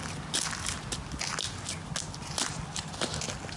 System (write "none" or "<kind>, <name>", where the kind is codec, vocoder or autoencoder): none